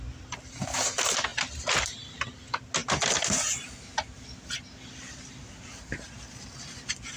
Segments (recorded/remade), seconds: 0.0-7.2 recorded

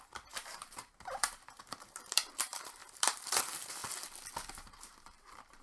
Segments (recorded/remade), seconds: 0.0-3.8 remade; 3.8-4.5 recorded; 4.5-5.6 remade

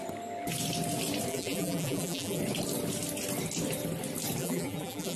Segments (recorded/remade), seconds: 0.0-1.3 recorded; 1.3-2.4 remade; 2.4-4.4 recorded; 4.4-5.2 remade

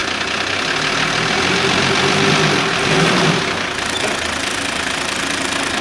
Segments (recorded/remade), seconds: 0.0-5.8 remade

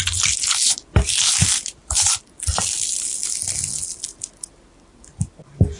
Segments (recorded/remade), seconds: 0.0-1.4 recorded; 1.4-2.1 remade; 2.1-5.8 recorded

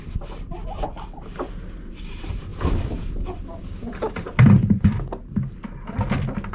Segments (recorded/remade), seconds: 0.0-6.5 remade

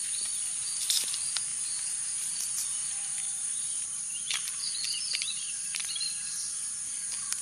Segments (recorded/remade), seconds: 0.0-1.5 recorded; 1.5-5.9 remade; 5.9-7.4 recorded